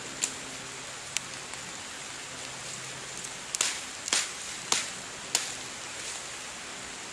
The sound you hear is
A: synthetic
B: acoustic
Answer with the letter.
B